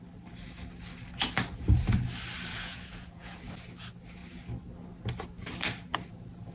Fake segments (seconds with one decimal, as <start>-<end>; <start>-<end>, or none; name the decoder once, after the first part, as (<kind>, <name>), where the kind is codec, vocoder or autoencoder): 2.5-3.5 (vocoder, Vocos)